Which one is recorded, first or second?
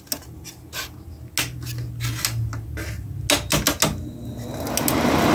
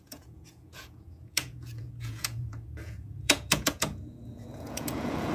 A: first